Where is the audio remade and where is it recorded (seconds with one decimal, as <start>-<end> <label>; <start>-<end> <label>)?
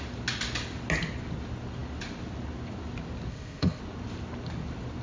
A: 0.0-3.3 recorded; 3.3-3.8 remade; 3.8-5.0 recorded